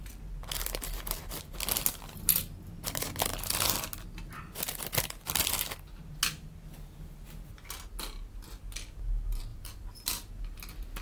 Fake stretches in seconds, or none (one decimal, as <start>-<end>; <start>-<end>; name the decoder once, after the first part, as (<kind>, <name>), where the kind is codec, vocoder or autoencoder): 9.5-10.3 (vocoder, BigVGAN v2)